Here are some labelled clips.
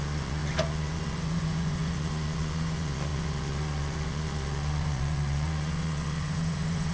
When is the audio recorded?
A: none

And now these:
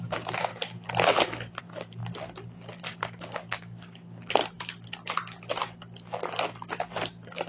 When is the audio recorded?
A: 0.5-1.6; 2.0-2.9; 4.4-7.5

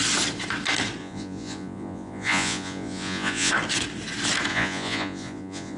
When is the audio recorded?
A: 0.0-1.0; 3.5-4.5